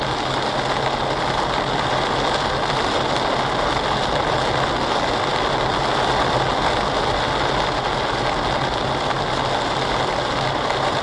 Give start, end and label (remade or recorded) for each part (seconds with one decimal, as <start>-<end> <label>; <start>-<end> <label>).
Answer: 0.0-11.0 recorded